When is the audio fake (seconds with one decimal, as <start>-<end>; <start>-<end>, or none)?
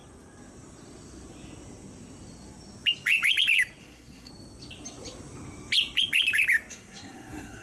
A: 3.8-4.3; 6.7-7.6